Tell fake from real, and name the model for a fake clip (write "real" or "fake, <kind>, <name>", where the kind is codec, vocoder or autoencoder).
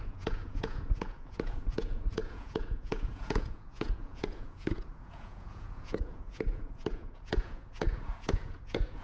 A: fake, vocoder, Vocos